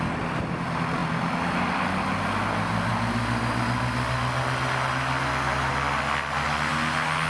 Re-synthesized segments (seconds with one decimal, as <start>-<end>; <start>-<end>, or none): none